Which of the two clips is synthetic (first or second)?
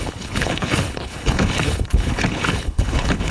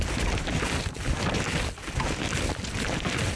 first